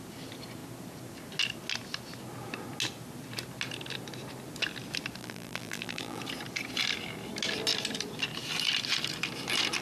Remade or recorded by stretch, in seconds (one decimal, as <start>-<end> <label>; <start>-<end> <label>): 0.0-5.2 recorded; 5.2-6.2 remade; 6.2-9.8 recorded